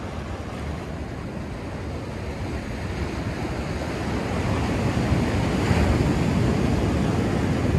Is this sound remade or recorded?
recorded